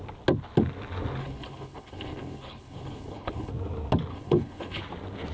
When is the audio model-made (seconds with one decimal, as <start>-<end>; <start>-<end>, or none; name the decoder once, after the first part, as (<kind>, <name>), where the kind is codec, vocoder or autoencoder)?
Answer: 1.2-3.5 (codec, HILCodec); 4.1-4.8